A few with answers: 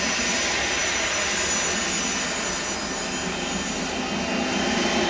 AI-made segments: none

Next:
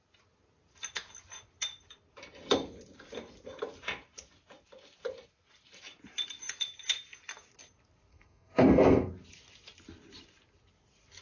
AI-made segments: 8.1-9.1 (codec, SNAC)

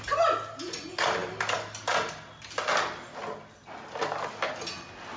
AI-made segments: none

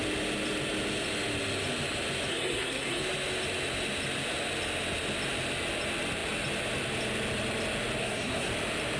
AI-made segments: 2.3-3.0 (codec, SNAC); 8.0-8.5

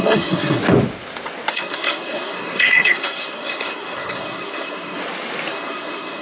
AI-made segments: 0.0-0.6 (codec, SNAC); 1.5-5.0; 5.5-6.2

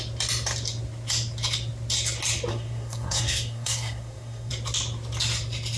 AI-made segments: 2.5-4.5 (codec, SNAC)